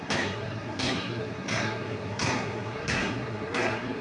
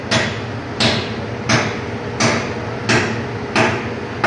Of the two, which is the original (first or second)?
second